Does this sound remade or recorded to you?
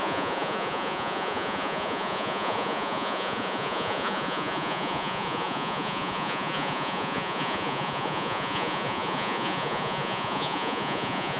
remade